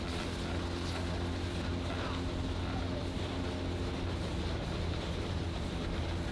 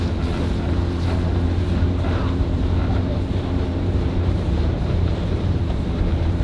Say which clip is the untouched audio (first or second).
first